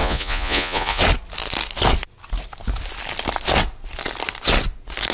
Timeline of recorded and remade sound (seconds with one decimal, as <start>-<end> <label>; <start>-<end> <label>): 0.0-1.0 remade; 1.0-5.1 recorded